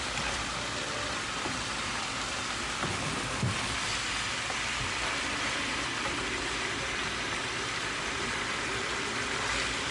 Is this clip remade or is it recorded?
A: remade